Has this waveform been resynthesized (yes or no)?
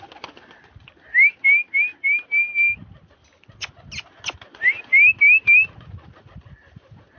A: no